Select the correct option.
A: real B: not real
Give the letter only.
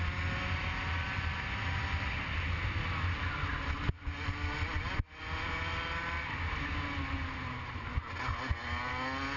A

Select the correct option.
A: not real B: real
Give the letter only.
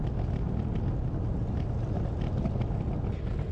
B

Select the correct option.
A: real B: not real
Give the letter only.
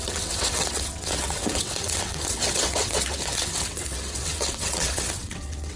B